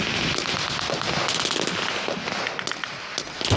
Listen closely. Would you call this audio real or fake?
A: real